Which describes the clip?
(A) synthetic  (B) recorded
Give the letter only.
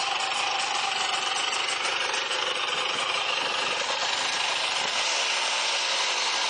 B